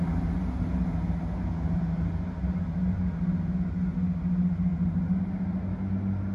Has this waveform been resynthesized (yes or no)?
no